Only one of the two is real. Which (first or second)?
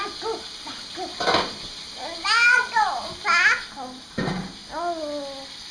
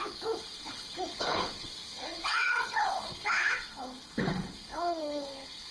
first